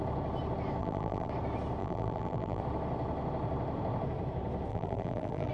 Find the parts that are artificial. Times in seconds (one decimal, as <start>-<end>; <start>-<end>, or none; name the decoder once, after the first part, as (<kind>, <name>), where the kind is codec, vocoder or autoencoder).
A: 0.8-1.3 (vocoder, BigVGAN v2); 1.8-2.6; 4.7-5.5